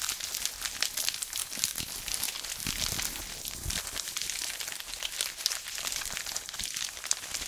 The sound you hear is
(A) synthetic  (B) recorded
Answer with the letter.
B